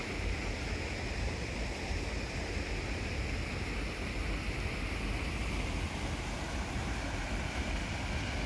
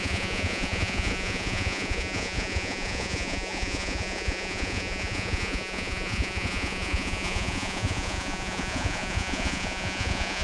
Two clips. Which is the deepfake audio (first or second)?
second